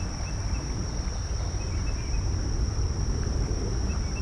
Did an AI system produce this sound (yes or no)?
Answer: no